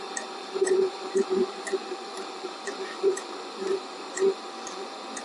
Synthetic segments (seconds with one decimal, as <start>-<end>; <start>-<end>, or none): 0.0-5.2